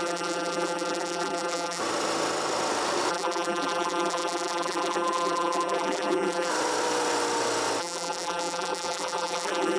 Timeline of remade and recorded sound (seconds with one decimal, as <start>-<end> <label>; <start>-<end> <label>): 0.0-1.8 remade; 1.8-3.1 recorded; 3.1-6.5 remade; 6.5-7.8 recorded; 7.8-9.8 remade